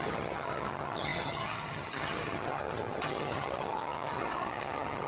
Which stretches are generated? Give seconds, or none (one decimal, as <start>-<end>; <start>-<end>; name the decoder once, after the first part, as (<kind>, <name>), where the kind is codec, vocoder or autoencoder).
0.0-5.1 (vocoder, HiFi-GAN)